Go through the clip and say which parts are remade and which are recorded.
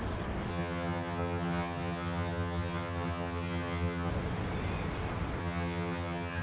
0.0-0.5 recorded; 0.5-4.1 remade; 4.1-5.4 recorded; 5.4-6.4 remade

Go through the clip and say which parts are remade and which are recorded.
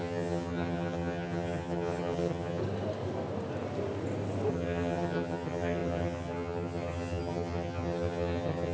0.0-2.6 remade; 2.6-4.5 recorded; 4.5-8.7 remade